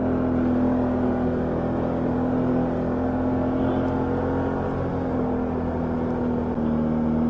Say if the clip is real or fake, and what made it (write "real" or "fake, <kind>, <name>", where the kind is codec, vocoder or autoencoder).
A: real